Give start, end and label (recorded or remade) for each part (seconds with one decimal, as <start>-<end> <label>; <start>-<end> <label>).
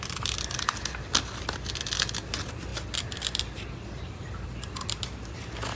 0.0-5.7 recorded